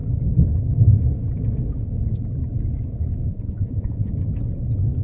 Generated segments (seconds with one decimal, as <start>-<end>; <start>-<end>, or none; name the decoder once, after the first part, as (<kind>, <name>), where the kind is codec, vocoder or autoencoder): 3.3-4.1 (vocoder, Vocos)